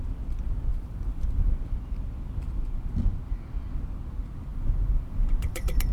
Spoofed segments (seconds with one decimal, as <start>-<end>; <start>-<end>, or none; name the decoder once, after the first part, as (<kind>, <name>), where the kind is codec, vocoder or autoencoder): 0.7-1.5 (vocoder, BigVGAN v2); 4.5-5.9